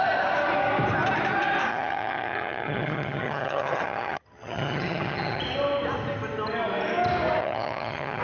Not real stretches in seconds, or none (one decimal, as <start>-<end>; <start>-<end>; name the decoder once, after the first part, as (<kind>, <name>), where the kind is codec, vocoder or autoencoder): 1.7-5.4 (vocoder, HiFi-GAN); 7.4-8.2

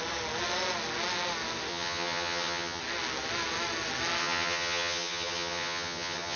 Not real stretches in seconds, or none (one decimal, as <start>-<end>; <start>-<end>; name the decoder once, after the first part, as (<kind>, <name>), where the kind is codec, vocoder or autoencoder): 1.7-2.8 (vocoder, HiFi-GAN); 4.2-6.4

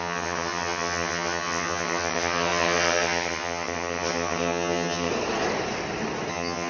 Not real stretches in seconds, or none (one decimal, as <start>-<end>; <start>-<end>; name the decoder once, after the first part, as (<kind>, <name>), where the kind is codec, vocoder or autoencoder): 0.0-5.1 (vocoder, HiFi-GAN); 6.3-6.7

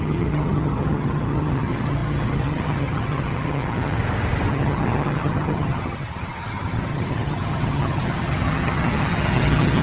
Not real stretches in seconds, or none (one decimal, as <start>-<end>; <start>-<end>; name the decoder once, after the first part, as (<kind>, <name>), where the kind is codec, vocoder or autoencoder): 0.0-4.0 (vocoder, HiFi-GAN); 4.5-9.8

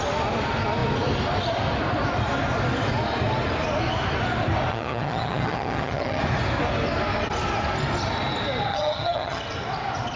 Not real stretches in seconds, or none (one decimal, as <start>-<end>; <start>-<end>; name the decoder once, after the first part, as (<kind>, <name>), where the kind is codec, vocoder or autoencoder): 4.7-6.2 (vocoder, HiFi-GAN); 8.7-9.4